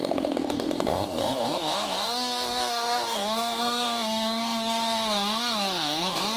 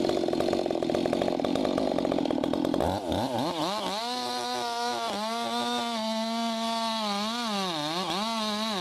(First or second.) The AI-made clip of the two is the first